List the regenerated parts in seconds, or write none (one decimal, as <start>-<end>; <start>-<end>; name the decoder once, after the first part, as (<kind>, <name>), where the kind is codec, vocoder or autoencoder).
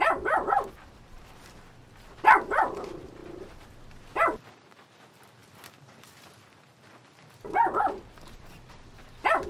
none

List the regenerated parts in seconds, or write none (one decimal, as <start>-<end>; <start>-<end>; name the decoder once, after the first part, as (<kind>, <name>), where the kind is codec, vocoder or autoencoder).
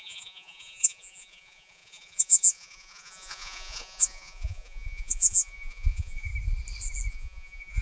0.0-6.3 (vocoder, Vocos); 7.1-7.8